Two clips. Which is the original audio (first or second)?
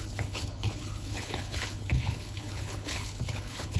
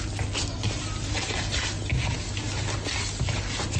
second